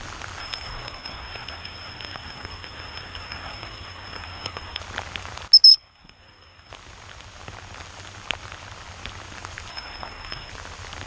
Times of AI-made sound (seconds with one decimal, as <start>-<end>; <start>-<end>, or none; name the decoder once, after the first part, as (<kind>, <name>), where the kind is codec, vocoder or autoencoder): 0.4-4.8 (codec, SNAC); 5.7-6.7; 9.7-10.5